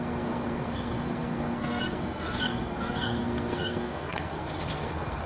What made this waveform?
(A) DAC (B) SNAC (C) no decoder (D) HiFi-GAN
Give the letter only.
B